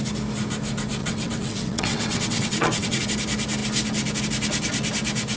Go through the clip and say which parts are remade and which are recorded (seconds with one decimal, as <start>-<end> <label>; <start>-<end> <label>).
0.0-1.0 recorded; 1.0-3.0 remade; 3.0-5.4 recorded